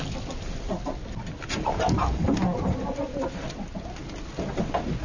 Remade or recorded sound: recorded